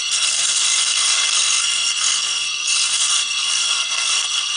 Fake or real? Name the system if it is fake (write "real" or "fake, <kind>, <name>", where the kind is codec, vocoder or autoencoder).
fake, codec, SNAC